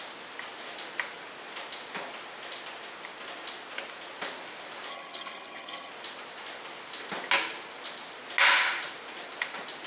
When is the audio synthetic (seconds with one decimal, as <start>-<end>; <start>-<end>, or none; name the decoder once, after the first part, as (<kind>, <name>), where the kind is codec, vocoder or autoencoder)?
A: 4.9-5.9 (vocoder, HiFi-GAN)